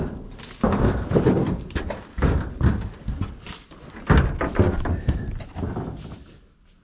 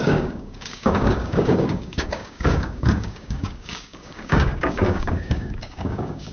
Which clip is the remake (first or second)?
second